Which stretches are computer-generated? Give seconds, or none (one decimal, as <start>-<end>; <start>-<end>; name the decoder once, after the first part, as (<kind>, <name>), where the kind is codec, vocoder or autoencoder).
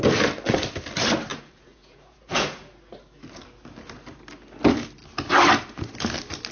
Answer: 1.3-2.7 (vocoder, Vocos)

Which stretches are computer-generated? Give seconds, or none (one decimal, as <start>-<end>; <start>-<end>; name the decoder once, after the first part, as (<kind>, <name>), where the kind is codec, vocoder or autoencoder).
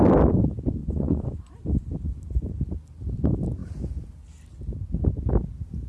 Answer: 0.8-1.3 (vocoder, Vocos)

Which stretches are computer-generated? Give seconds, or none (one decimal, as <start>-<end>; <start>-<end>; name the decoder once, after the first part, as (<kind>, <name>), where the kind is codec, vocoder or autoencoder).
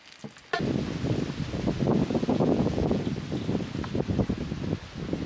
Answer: 2.3-3.0 (vocoder, Vocos)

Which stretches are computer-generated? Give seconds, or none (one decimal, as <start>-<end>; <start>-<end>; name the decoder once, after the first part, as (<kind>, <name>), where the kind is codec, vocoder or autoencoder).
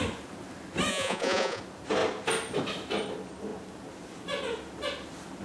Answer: 0.9-1.6 (vocoder, Vocos)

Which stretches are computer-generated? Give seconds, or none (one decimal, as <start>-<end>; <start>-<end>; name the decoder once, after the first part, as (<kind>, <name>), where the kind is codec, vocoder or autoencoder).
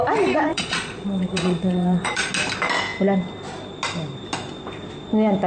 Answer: 0.5-2.3 (vocoder, Vocos)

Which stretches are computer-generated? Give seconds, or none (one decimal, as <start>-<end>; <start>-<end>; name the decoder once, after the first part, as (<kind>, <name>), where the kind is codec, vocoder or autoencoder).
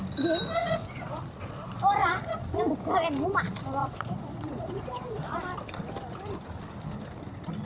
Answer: 0.6-1.2 (vocoder, Vocos); 2.0-2.6; 3.8-5.4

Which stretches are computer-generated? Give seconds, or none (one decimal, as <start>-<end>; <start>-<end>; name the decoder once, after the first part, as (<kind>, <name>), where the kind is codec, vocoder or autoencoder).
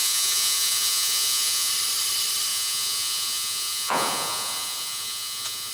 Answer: 0.0-1.7 (vocoder, Vocos); 2.5-5.7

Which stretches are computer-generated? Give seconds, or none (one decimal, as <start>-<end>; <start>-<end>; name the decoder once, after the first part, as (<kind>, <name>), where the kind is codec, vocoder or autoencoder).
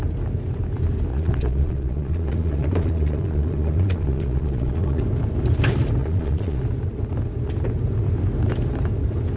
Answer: 1.1-5.0 (vocoder, Vocos); 6.0-6.6